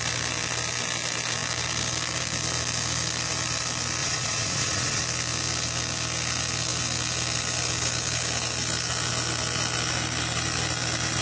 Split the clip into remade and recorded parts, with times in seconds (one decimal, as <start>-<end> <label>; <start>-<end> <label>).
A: 0.0-4.0 recorded; 4.0-5.0 remade; 5.0-11.2 recorded